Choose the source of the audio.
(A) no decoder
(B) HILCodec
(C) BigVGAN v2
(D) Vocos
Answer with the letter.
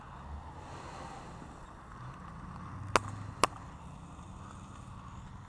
A